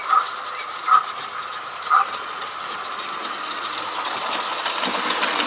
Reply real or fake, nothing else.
real